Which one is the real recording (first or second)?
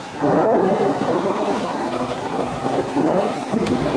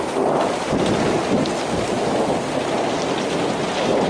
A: second